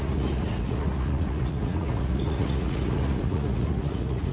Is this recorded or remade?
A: remade